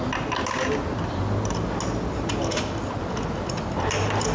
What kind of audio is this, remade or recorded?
recorded